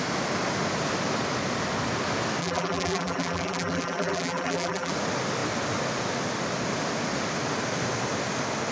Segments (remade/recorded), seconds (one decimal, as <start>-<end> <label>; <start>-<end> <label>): 0.0-2.4 recorded; 2.4-4.9 remade; 4.9-8.7 recorded

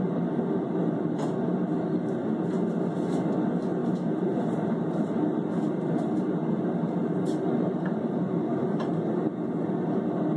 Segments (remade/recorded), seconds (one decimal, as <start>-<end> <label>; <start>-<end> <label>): 0.0-1.3 remade; 1.3-3.8 recorded; 3.8-8.9 remade; 8.9-10.4 recorded

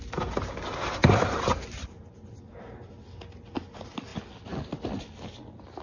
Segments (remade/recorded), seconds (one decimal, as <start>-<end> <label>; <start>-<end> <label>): 0.0-1.0 recorded; 1.0-2.4 remade; 2.4-5.8 recorded

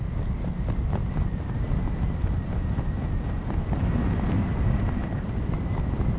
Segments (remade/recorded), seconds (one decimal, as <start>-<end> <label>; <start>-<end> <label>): 0.0-6.2 recorded

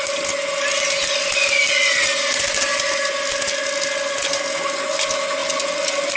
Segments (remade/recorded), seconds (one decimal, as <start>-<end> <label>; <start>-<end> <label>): 0.0-6.2 recorded

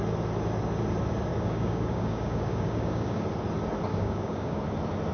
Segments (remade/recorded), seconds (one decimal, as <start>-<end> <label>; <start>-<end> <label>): 0.0-1.3 recorded; 1.3-3.2 remade; 3.2-3.9 recorded; 3.9-4.6 remade; 4.6-5.1 recorded

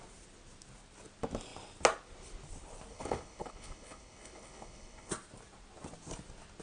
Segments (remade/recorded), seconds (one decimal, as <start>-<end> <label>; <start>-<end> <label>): 0.0-2.9 recorded; 2.9-5.1 remade; 5.1-6.6 recorded